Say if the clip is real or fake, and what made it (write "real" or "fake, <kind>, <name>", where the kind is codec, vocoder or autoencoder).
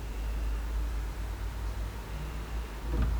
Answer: real